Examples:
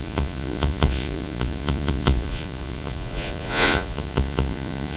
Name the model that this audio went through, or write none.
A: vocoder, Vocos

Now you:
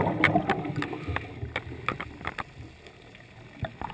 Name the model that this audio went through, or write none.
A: none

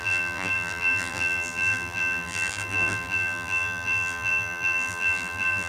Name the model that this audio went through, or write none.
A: vocoder, BigVGAN v2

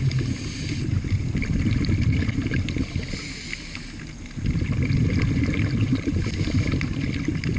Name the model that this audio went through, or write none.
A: none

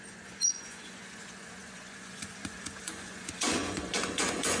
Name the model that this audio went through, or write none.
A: vocoder, Vocos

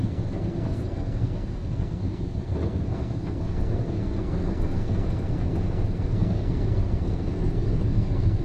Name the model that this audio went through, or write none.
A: codec, SNAC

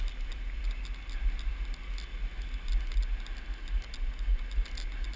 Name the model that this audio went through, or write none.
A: none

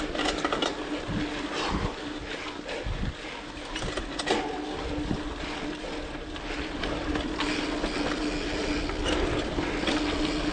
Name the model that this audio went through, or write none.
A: none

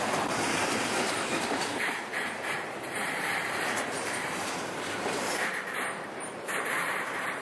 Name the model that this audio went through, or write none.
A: vocoder, BigVGAN v2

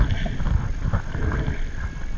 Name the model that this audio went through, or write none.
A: none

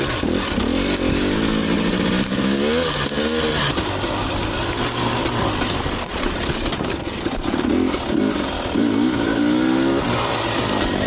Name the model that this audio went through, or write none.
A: none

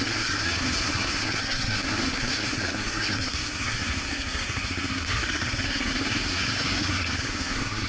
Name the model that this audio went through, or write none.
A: codec, SNAC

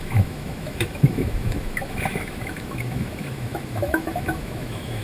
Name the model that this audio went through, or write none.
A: autoencoder, DAC-VAE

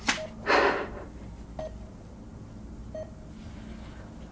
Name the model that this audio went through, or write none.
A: none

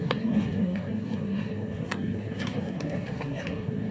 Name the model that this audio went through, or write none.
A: codec, SNAC